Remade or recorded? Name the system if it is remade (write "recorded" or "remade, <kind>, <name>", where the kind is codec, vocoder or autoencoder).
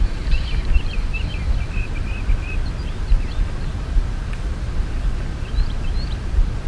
recorded